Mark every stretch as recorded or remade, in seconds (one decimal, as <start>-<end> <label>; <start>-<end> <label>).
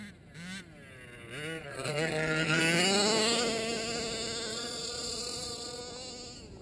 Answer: 0.0-1.6 recorded; 1.6-2.6 remade; 2.6-4.5 recorded; 4.5-5.8 remade; 5.8-6.6 recorded